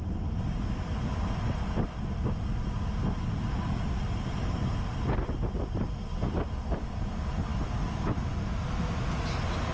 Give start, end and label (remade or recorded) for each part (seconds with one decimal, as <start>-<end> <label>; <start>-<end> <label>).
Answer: 0.0-9.7 recorded